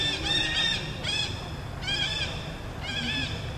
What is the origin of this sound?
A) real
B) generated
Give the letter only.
A